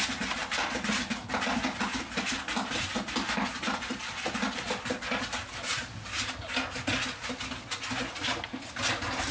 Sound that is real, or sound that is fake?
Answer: real